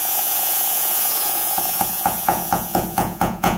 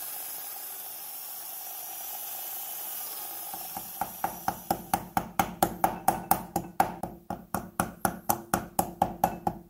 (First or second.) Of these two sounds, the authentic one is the second